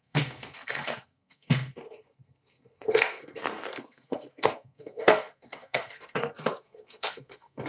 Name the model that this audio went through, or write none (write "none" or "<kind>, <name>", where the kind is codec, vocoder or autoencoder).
codec, SNAC